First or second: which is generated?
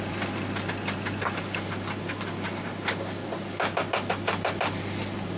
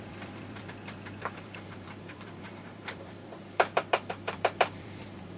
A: second